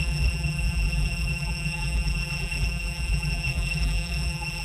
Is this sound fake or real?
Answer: fake